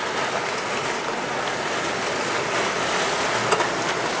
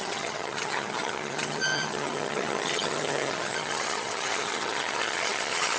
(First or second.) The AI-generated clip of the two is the second